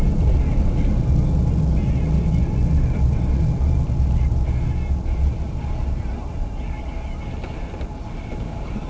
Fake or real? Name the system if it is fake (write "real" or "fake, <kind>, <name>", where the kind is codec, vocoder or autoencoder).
real